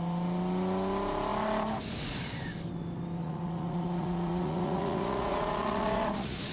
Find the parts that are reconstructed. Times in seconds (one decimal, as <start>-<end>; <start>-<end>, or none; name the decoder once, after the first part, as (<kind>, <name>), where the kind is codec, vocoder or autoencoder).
3.2-6.5 (vocoder, Vocos)